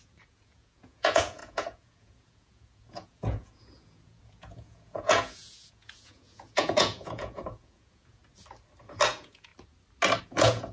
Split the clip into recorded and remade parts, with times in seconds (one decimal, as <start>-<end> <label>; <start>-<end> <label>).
0.0-8.2 remade; 8.2-9.1 recorded; 9.1-9.5 remade; 9.5-10.2 recorded; 10.2-10.7 remade